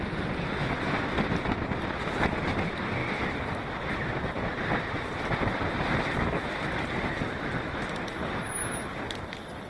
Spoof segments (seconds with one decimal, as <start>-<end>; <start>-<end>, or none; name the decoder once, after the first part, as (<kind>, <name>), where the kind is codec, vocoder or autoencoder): 3.0-6.6 (vocoder, BigVGAN v2)

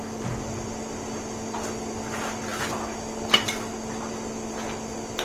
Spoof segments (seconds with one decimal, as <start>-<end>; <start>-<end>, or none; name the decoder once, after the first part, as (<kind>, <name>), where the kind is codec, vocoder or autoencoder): none